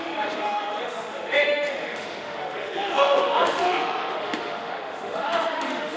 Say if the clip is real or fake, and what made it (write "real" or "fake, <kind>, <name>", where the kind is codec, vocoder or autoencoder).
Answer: fake, autoencoder, DAC-VAE